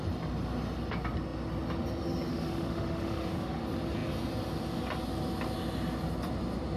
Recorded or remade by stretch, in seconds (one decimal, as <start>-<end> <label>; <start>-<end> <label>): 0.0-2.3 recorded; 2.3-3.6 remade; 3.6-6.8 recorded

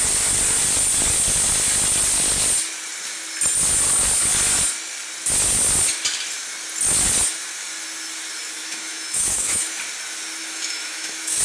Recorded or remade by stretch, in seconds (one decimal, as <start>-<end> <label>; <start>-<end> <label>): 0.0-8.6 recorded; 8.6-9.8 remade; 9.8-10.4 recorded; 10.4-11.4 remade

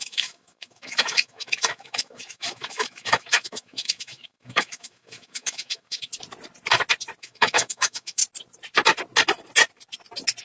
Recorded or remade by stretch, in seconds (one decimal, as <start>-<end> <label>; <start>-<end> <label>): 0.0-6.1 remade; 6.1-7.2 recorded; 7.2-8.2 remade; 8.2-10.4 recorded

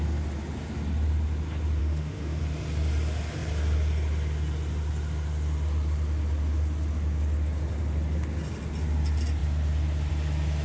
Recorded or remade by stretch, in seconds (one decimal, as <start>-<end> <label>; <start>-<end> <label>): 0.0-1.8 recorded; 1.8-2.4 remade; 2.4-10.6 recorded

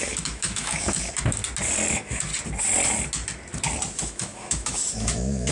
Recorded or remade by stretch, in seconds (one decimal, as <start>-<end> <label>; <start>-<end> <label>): 0.0-1.4 remade; 1.4-1.9 recorded; 1.9-2.3 remade; 2.3-4.0 recorded; 4.0-5.5 remade

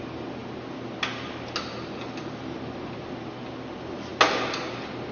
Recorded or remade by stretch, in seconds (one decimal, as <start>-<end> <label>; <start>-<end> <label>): 0.0-5.1 recorded